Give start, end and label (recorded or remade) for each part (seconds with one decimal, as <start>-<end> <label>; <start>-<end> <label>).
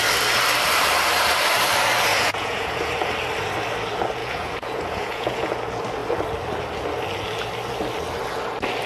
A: 0.0-2.1 recorded; 2.1-2.9 remade; 2.9-4.2 recorded; 4.2-5.5 remade; 5.5-8.9 recorded